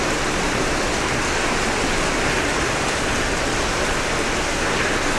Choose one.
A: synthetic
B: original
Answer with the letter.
B